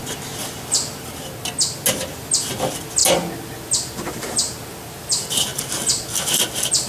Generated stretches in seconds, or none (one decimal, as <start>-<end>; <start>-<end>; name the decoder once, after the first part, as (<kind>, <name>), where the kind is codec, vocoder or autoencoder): none